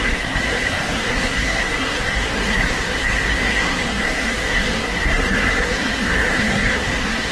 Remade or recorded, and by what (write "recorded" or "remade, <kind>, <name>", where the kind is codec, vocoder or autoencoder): remade, codec, SNAC